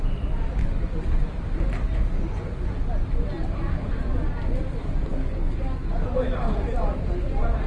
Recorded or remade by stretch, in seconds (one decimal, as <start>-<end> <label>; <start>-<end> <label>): 0.0-0.6 recorded; 0.6-1.2 remade; 1.2-5.1 recorded; 5.1-5.9 remade; 5.9-7.7 recorded